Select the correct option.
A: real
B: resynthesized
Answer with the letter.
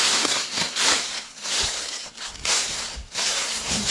B